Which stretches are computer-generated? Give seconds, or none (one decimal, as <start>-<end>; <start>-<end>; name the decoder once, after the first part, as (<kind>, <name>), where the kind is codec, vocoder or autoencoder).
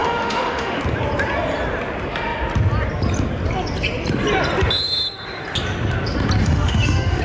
0.0-0.8 (autoencoder, DAC-VAE); 6.4-7.2